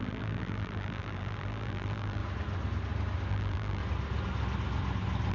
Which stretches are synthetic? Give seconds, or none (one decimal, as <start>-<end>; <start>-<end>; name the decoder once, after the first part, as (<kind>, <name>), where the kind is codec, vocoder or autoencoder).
0.0-2.2 (vocoder, BigVGAN v2); 3.3-3.8